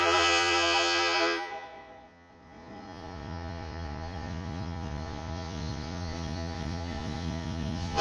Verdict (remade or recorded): remade